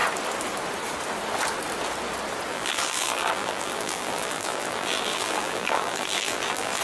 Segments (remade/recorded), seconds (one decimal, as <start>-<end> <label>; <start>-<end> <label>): 0.0-2.5 recorded; 2.5-6.8 remade